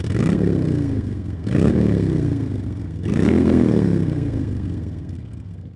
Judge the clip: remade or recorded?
remade